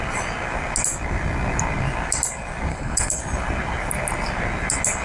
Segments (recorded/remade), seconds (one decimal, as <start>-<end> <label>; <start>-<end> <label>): 0.0-2.7 recorded; 2.7-3.2 remade; 3.2-5.0 recorded